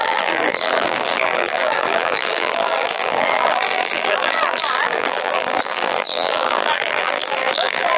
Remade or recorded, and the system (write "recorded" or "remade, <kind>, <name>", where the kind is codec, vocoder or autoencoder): remade, vocoder, BigVGAN v2